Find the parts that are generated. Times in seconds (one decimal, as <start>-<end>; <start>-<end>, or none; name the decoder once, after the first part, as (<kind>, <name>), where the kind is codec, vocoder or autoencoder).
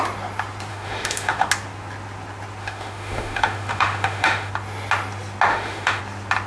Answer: 0.7-1.5 (autoencoder, DAC-VAE); 2.6-4.5; 5.5-6.0